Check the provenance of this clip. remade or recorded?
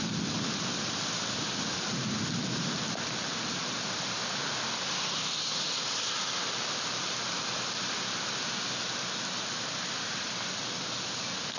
recorded